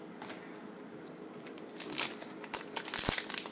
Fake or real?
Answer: real